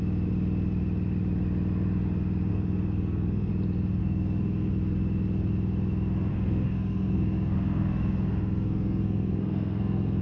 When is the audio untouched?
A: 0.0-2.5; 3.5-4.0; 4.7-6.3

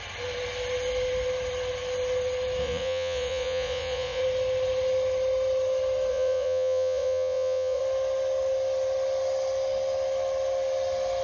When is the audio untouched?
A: 0.0-2.6; 4.2-6.1; 7.8-11.2

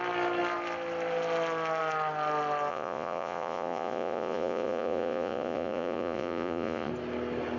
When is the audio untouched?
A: 0.0-2.7; 6.9-7.6

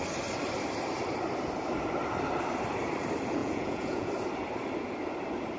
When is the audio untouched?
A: 0.0-3.4; 4.1-5.6

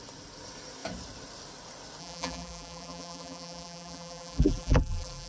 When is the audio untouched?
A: 0.0-2.0

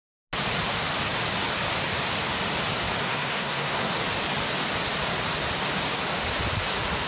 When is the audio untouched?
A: 0.0-3.0; 3.9-7.1

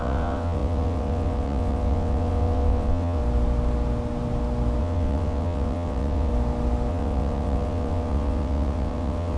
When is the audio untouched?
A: 3.2-4.8; 6.3-6.9